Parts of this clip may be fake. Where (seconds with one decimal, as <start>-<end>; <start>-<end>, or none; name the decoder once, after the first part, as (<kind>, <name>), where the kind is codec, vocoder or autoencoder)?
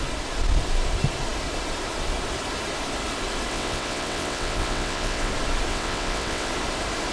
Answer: 3.5-5.3 (vocoder, WaveNeXt); 5.7-6.5